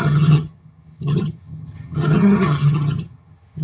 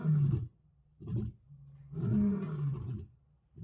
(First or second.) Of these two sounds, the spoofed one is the first